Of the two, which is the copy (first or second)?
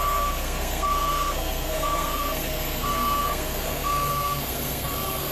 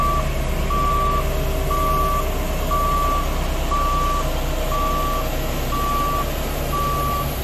first